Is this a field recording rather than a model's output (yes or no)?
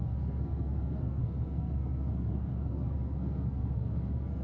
no